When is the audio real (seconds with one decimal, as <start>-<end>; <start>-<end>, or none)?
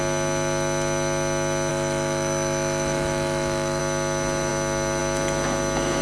0.0-1.7; 3.8-6.0